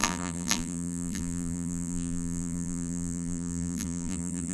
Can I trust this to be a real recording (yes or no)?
no